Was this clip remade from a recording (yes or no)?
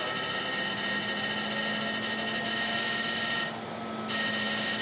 no